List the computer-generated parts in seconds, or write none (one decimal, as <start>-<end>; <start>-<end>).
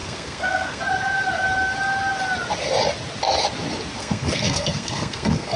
0.0-0.8; 4.0-5.6